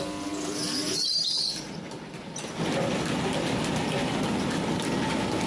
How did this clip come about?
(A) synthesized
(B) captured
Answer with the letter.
B